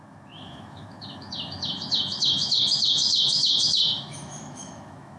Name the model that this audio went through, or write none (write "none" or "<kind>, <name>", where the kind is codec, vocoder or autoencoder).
autoencoder, DAC-VAE